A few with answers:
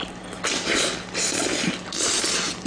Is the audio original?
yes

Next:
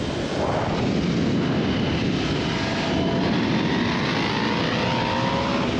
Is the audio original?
yes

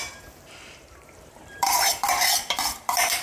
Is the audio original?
no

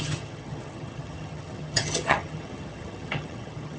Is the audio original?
no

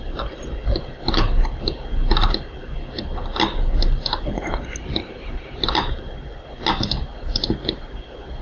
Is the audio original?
yes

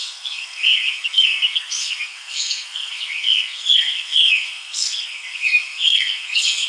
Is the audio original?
no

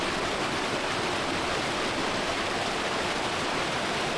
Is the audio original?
yes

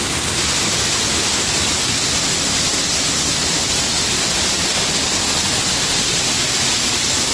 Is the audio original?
yes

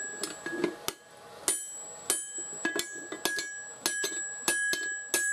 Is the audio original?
yes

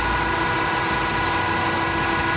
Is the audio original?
yes